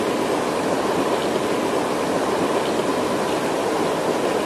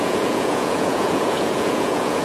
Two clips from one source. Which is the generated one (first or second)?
second